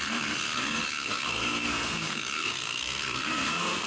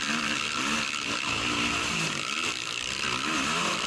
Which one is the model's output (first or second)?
first